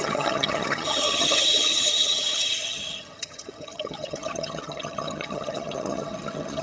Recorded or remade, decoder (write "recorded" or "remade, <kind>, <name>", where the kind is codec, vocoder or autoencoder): remade, vocoder, HiFi-GAN